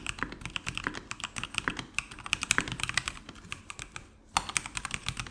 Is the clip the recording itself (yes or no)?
yes